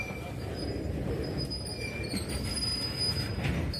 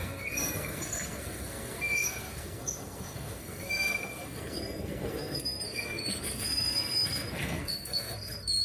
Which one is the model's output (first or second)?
second